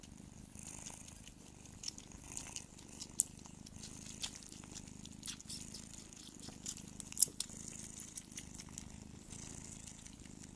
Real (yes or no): yes